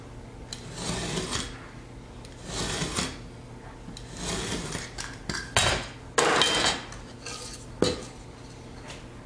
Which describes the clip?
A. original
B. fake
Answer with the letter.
A